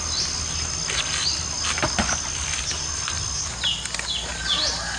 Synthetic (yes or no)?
no